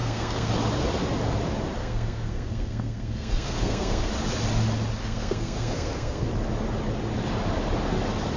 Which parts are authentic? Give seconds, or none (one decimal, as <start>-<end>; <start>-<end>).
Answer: 0.5-1.8; 4.1-5.0; 6.3-8.4